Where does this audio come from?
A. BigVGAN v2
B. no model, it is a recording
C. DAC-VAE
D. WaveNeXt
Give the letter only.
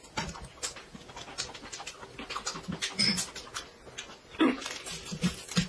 B